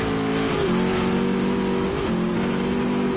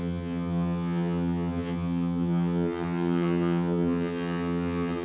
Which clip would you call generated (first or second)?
second